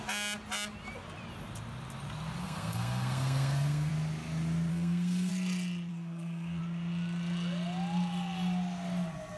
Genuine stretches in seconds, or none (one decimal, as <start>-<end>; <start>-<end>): 0.0-2.4; 3.9-4.7; 5.3-5.9; 6.6-9.4